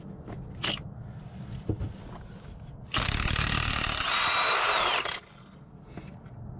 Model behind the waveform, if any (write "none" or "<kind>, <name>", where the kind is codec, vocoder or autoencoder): none